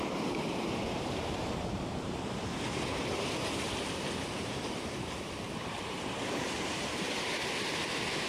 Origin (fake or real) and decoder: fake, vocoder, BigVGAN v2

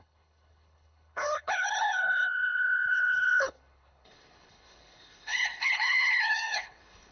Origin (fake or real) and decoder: fake, codec, HILCodec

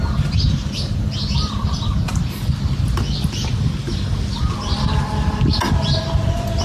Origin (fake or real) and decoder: real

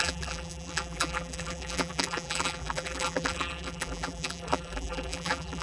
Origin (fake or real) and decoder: fake, vocoder, BigVGAN v2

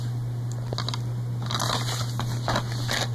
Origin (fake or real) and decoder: real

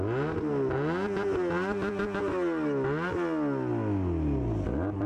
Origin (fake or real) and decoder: real